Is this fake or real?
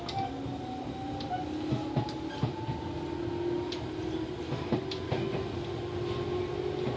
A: real